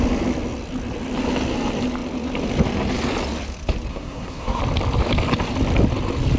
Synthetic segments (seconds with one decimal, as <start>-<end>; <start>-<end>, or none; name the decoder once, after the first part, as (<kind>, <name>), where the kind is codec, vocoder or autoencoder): 3.9-4.6 (codec, SNAC)